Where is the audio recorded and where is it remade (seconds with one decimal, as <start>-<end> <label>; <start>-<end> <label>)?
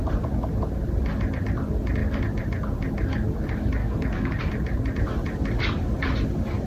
0.0-3.8 recorded; 3.8-4.4 remade; 4.4-6.7 recorded